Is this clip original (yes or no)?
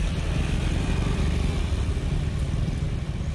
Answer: yes